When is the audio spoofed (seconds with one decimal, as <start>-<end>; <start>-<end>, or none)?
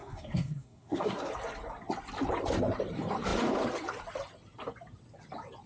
0.0-1.3